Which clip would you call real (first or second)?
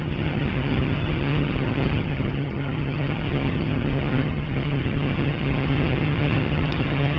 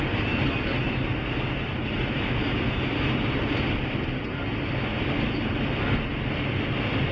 second